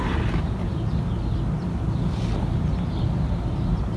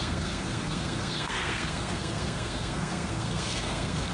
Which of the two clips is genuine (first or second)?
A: first